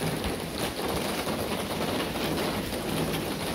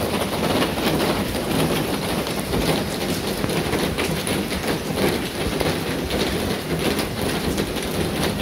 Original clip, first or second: first